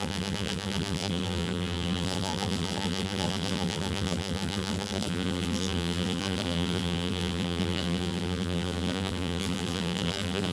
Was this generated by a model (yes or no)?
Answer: yes